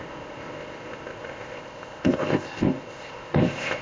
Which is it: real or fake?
fake